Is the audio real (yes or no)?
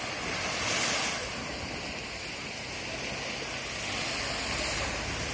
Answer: yes